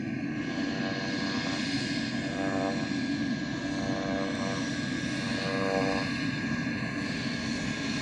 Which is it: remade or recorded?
recorded